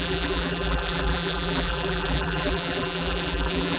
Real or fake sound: fake